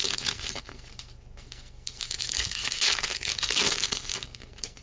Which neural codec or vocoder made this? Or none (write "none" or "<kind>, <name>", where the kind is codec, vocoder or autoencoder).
codec, SNAC